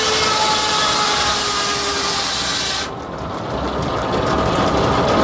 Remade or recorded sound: recorded